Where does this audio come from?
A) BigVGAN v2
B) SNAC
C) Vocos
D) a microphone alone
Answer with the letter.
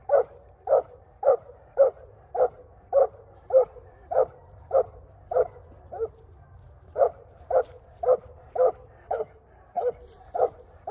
A